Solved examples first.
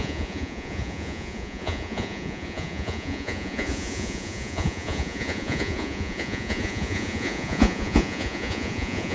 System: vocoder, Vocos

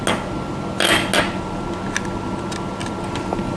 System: none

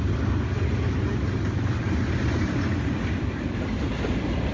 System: none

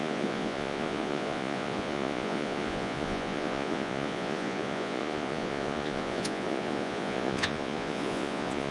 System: vocoder, Vocos